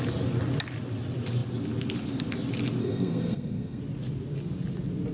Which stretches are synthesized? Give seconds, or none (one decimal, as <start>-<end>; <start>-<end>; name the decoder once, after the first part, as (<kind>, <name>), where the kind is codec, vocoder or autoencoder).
2.8-3.8 (codec, SNAC)